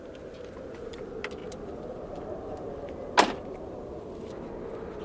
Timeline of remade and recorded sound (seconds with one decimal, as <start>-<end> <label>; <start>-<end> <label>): 0.0-5.0 recorded